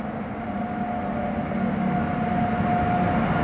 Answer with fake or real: real